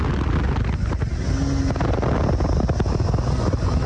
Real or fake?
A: real